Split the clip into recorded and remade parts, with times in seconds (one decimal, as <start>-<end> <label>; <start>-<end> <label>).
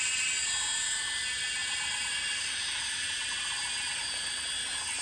0.0-5.0 recorded